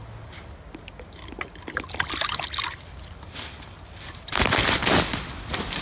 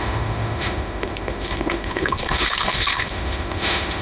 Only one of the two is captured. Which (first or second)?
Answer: first